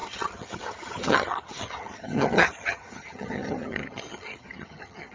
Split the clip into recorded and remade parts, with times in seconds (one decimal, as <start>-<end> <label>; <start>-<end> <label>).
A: 0.0-5.1 remade